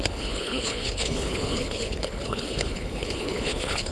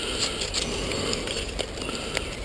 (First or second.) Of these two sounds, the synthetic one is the first